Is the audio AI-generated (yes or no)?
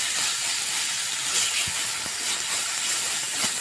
no